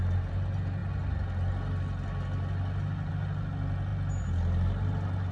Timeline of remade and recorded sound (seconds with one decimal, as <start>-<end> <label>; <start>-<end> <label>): 0.0-5.3 recorded